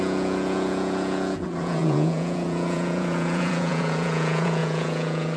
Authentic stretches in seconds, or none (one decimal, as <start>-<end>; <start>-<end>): none